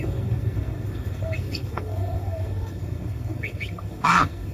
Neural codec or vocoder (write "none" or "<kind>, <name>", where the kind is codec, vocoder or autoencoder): codec, SNAC